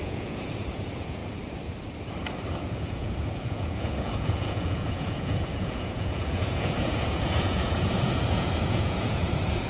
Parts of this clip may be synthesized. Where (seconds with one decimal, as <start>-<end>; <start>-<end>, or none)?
0.0-1.2; 2.6-9.7